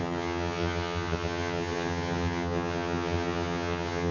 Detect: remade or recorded remade